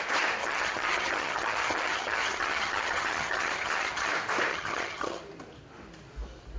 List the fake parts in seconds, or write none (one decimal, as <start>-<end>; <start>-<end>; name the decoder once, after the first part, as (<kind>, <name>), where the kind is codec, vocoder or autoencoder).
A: 0.4-4.1 (vocoder, HiFi-GAN); 4.5-5.2